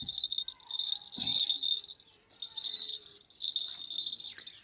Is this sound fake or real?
real